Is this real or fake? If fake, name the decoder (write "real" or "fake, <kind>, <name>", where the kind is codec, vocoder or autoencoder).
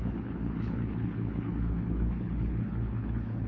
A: fake, codec, HILCodec